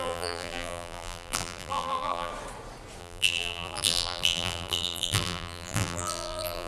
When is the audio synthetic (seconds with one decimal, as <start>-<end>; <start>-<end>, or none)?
0.0-2.3; 3.0-6.7